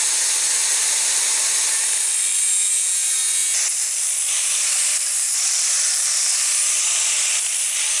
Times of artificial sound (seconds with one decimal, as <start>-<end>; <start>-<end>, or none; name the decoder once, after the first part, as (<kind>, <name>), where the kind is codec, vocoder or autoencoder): none